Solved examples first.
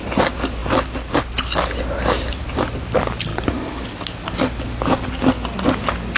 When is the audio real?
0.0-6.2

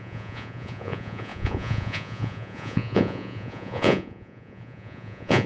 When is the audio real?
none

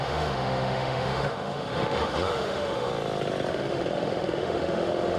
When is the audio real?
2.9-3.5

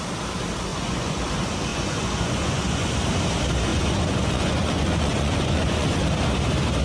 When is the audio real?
0.0-0.7; 1.2-1.7; 2.9-3.7; 6.0-6.8

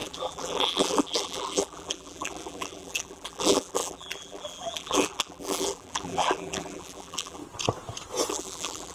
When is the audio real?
7.4-8.3

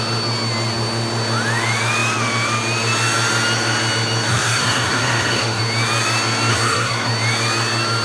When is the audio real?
0.0-4.3; 5.6-6.5; 7.1-8.0

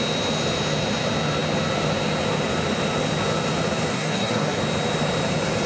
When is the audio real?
0.0-3.9; 4.6-5.7

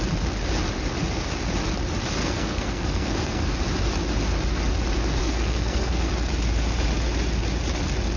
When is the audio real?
0.0-2.2; 3.5-5.2; 6.1-8.2